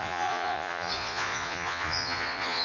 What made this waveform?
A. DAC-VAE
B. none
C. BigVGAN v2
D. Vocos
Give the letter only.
D